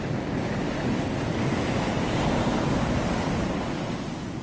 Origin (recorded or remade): recorded